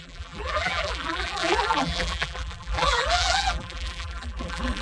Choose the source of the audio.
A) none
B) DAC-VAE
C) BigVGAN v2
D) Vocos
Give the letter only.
C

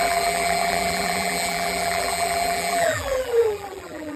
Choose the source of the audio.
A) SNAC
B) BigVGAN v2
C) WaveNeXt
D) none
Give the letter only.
B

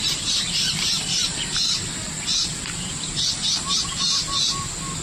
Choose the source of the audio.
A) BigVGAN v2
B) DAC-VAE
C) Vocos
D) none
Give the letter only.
D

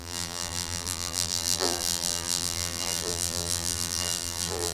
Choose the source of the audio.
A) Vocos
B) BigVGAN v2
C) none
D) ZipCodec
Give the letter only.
B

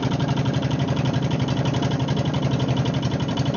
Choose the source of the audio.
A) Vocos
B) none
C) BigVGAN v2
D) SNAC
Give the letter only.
C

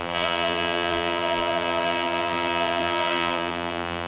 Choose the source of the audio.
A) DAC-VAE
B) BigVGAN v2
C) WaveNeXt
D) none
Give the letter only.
B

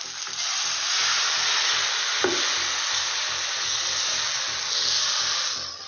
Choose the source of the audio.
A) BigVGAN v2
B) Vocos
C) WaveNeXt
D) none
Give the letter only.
D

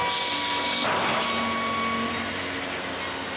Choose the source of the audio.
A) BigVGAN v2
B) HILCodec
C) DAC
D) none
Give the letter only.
D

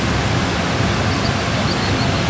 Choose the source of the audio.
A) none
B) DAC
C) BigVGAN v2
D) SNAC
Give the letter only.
A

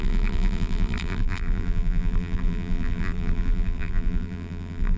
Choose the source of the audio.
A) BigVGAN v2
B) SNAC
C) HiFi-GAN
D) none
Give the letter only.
A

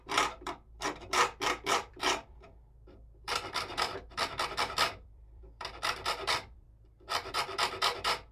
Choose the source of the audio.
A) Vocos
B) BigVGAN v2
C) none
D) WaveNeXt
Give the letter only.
B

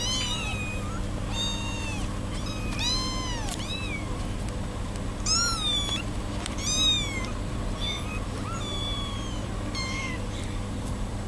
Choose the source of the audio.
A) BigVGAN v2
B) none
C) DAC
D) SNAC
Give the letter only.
A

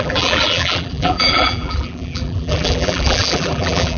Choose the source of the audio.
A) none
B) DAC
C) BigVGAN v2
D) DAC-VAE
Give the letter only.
C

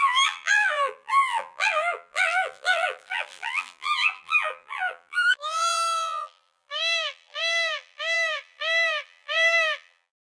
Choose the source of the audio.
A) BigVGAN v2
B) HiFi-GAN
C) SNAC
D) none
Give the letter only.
A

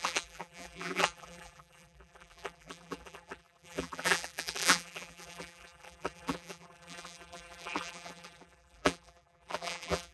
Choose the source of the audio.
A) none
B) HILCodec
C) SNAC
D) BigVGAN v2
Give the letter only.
D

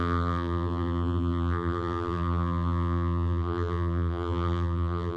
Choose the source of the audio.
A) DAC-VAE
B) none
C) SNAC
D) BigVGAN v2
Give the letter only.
D